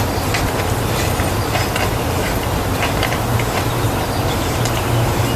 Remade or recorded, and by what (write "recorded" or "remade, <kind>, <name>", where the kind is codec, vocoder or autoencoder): recorded